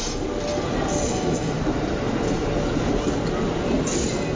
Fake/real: real